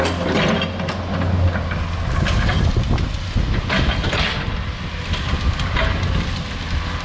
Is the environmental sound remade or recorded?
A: recorded